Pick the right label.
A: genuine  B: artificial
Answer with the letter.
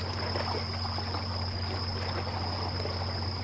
A